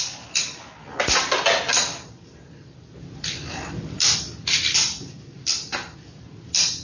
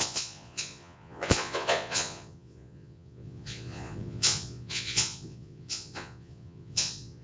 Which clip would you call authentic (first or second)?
first